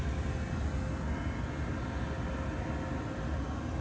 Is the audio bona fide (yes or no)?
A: yes